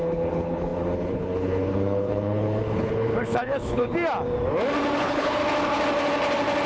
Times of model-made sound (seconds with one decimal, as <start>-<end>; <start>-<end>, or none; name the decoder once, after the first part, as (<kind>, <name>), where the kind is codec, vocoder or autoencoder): 0.0-3.9 (codec, HILCodec); 5.0-5.4